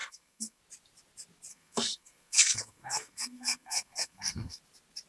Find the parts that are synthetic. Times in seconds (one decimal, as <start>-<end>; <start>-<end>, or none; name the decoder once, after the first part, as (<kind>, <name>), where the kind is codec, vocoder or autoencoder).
0.0-0.6 (codec, SNAC); 1.5-4.6